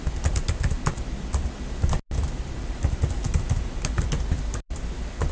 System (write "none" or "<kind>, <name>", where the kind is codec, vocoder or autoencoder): none